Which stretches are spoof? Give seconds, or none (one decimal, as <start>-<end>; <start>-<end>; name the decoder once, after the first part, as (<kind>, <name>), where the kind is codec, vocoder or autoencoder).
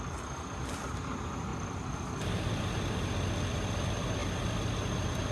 1.5-2.6 (vocoder, BigVGAN v2)